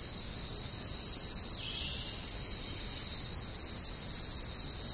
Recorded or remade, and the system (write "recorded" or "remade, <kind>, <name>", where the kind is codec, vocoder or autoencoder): recorded